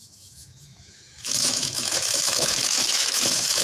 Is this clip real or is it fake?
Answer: fake